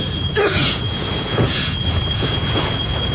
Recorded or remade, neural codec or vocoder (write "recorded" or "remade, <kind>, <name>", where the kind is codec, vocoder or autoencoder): remade, vocoder, Vocos